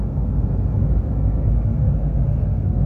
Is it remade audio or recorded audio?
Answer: remade